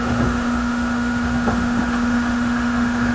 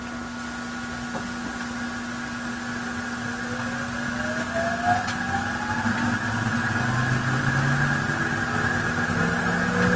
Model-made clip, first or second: first